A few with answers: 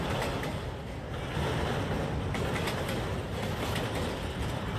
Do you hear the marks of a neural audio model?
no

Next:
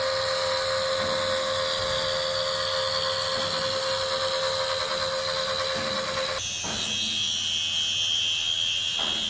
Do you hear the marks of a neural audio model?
no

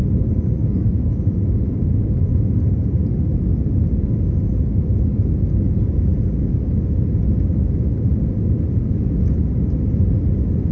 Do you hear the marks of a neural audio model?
no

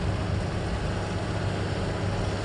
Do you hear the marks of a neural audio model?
no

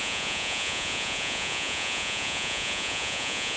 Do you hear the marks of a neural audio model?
yes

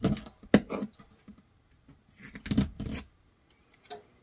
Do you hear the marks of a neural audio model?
no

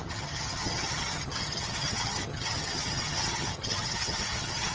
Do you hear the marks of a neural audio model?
yes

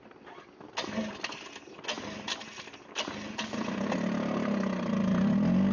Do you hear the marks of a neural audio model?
no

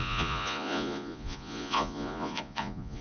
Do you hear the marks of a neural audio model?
yes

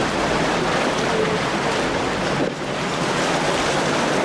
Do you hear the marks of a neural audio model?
no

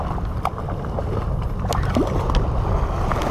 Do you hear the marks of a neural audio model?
no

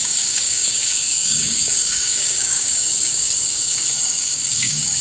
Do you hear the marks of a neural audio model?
yes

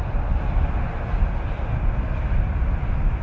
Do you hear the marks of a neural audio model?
no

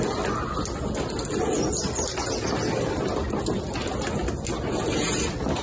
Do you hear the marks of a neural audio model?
no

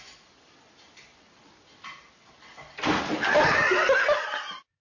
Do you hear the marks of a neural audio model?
no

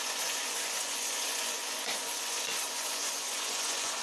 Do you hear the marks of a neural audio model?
yes